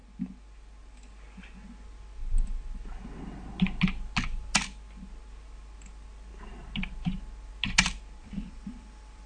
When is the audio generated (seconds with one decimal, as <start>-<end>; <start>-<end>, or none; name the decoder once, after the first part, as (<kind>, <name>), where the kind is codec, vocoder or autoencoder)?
8.2-9.3 (vocoder, BigVGAN v2)